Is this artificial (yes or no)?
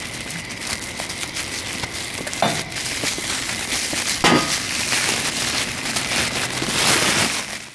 no